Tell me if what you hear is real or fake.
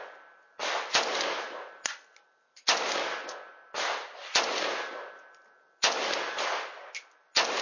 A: real